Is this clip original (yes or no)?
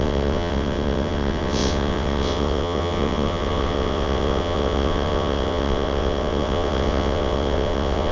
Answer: no